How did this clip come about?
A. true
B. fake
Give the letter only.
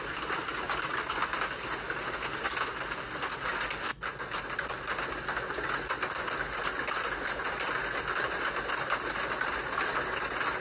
A